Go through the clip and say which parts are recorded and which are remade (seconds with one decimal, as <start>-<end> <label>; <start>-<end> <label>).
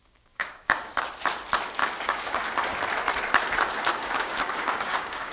0.0-0.9 remade; 0.9-1.8 recorded; 1.8-2.4 remade; 2.4-3.9 recorded; 3.9-5.3 remade